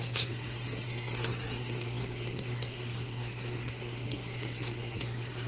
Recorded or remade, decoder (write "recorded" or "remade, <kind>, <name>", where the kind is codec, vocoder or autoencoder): remade, codec, SNAC